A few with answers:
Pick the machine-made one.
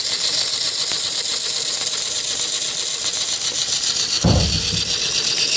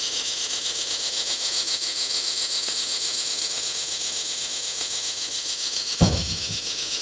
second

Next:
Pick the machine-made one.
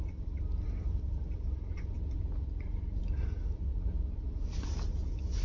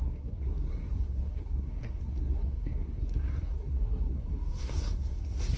second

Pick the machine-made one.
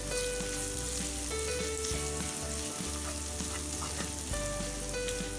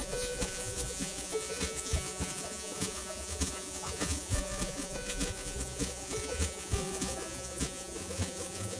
second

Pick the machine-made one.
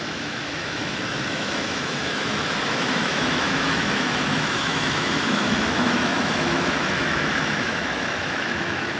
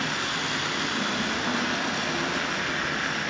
first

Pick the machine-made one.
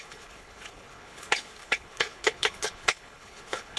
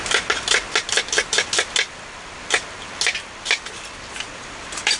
first